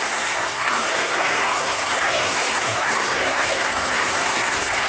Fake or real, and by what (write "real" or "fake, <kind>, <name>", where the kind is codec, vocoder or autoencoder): fake, codec, SNAC